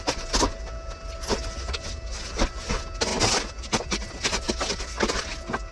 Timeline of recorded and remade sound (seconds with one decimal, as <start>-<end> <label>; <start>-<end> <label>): 0.0-5.7 recorded